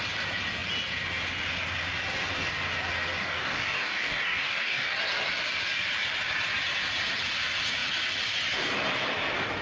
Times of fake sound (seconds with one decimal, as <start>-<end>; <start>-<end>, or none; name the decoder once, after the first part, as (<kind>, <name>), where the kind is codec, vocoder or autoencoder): 3.2-5.0 (codec, DAC)